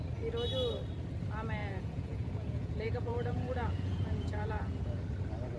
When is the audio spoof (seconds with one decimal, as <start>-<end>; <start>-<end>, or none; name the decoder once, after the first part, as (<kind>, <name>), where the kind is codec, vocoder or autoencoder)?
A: 1.6-5.0 (vocoder, Vocos)